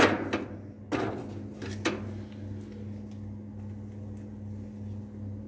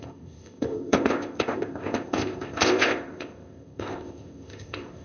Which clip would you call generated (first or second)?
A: second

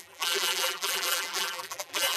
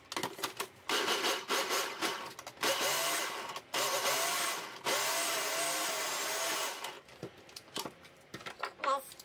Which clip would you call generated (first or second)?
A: first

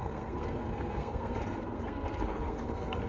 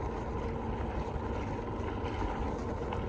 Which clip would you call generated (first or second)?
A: first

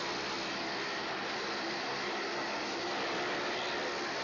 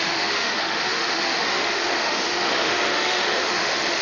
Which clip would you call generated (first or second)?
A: second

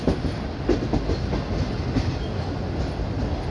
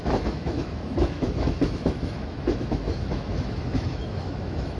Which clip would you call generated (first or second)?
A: second